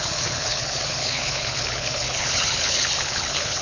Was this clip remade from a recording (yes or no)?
yes